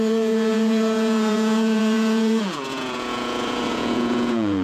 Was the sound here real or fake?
fake